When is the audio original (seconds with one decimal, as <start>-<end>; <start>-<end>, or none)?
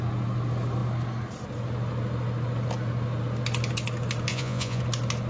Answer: 0.0-4.3; 4.8-5.3